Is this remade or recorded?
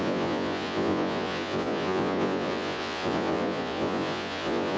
remade